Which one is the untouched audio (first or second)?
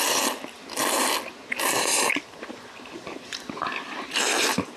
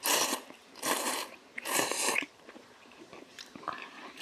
first